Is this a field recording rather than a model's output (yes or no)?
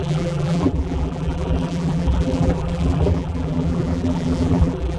no